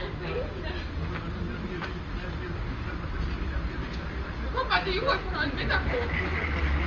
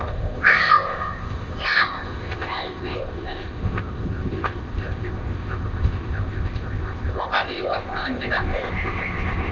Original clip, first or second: first